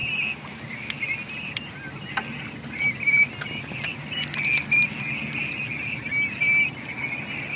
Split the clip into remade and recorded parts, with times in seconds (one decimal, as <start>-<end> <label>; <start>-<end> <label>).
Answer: 0.0-7.6 recorded